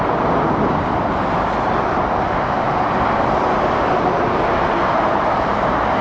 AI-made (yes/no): no